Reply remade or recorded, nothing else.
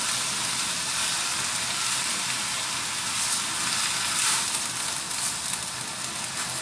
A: recorded